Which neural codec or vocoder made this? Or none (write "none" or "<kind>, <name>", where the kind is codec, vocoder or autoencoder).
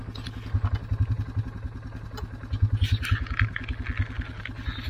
none